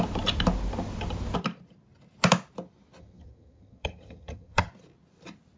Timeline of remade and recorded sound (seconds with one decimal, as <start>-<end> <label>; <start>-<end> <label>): 0.0-3.0 recorded; 3.0-4.7 remade; 4.7-5.6 recorded